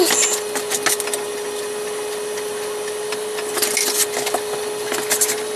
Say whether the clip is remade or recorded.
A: recorded